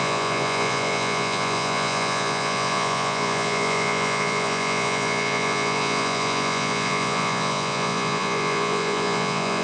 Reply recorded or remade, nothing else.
remade